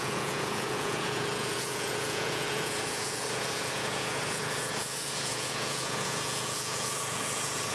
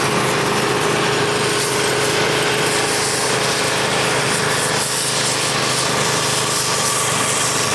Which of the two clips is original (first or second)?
second